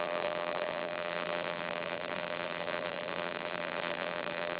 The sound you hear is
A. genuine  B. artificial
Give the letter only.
B